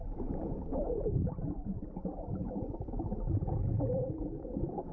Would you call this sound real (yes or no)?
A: yes